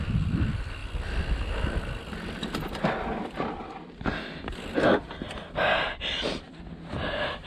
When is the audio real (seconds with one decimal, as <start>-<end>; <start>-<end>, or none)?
0.0-7.5